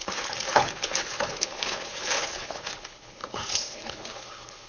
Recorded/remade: remade